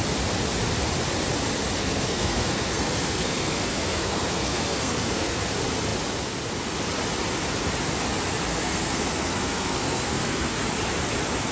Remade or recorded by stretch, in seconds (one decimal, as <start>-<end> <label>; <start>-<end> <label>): 0.0-1.8 recorded; 1.8-5.4 remade; 5.4-8.5 recorded; 8.5-10.6 remade; 10.6-11.5 recorded